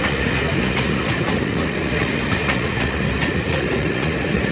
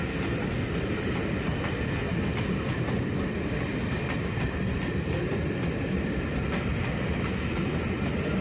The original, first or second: second